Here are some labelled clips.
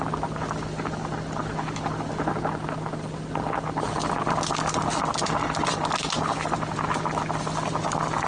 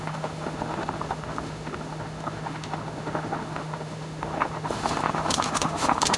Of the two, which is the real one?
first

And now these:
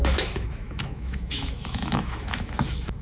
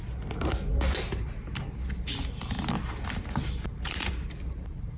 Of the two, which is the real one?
second